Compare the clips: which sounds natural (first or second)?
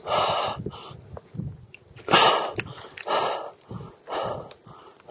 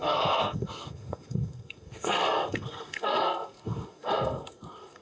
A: first